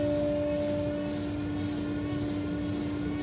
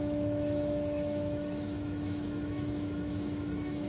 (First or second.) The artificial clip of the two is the second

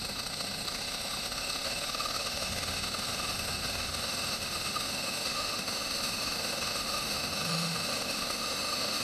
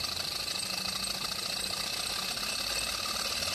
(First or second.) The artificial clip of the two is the first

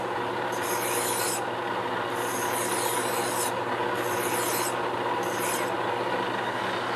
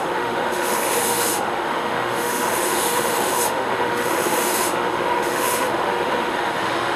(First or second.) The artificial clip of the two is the second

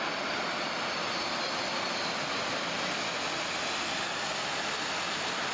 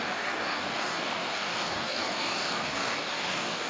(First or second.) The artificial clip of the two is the second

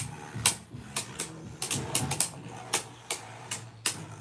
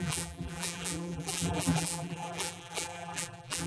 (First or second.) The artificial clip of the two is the second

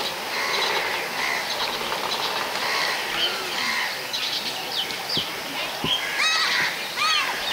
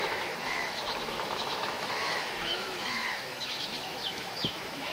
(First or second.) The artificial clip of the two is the second